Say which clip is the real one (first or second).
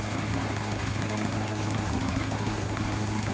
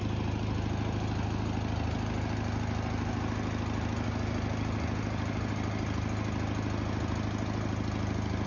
second